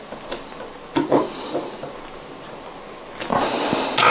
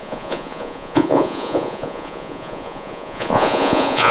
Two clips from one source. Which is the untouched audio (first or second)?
first